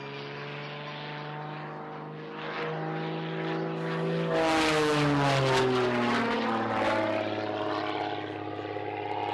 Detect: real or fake real